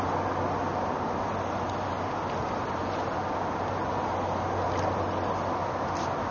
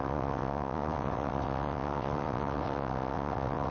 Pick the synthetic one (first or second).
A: second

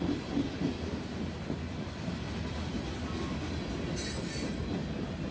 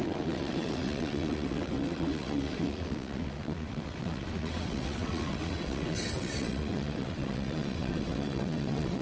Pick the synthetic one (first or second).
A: second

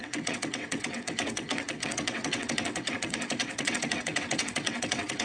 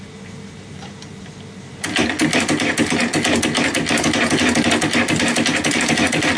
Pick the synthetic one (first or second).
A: first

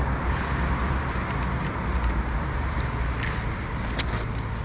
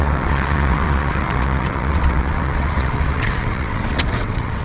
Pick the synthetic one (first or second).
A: second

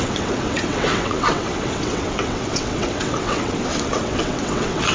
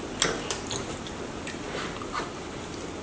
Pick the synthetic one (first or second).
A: first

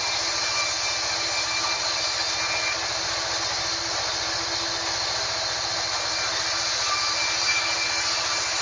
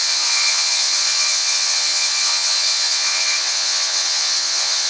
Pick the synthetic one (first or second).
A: second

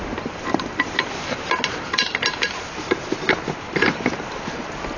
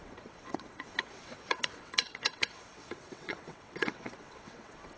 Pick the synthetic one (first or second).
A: second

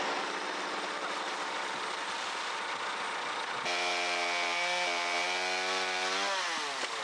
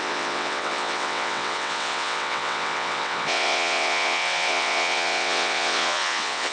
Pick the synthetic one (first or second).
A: second